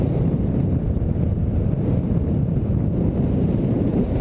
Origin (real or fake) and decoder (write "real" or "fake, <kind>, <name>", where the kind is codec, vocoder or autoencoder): real